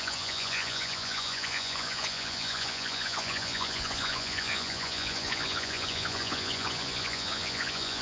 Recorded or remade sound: remade